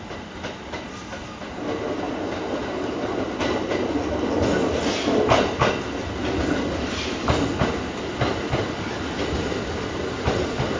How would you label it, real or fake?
real